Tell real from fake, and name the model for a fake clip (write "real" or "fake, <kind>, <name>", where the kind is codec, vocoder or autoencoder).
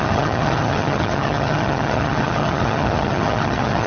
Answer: fake, vocoder, HiFi-GAN